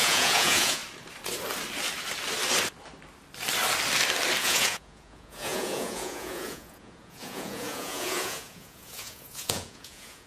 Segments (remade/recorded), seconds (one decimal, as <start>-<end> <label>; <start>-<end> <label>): 0.0-0.8 remade; 0.8-4.4 recorded; 4.4-10.3 remade